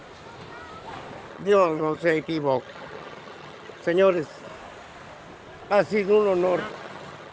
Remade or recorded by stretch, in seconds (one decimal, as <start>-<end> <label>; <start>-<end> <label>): 0.0-1.3 recorded; 1.3-4.5 remade; 4.5-6.7 recorded; 6.7-7.3 remade